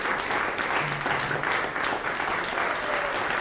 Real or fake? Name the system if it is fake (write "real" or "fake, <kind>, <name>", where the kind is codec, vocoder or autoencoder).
real